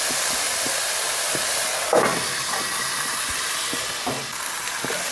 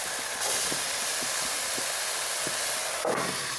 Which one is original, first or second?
second